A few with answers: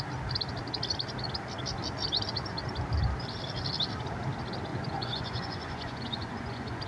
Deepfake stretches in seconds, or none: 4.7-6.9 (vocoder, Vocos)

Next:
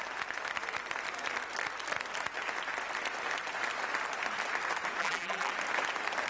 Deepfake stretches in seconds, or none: 5.0-5.5 (vocoder, BigVGAN v2)

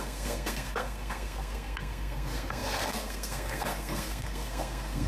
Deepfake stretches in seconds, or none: 0.0-5.1 (codec, SNAC)

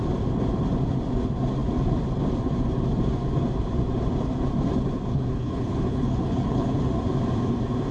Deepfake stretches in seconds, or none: 5.1-6.8 (codec, HILCodec)

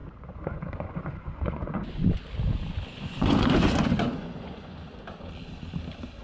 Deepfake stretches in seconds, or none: 0.0-2.2 (vocoder, Vocos); 2.9-4.8

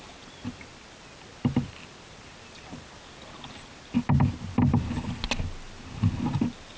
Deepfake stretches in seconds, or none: none

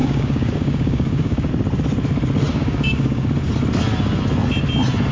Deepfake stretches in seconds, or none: 0.0-1.5 (codec, DAC); 2.5-3.3

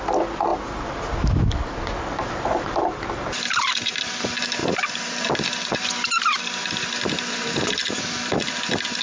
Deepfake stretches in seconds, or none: 0.5-4.0 (vocoder, BigVGAN v2)